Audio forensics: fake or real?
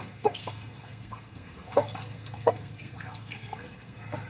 fake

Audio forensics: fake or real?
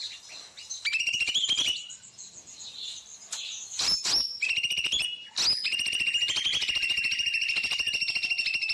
real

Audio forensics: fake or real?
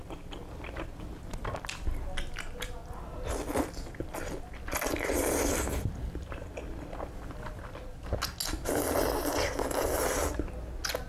real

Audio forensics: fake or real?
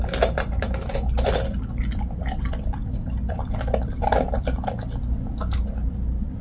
real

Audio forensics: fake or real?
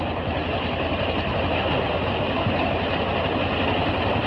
real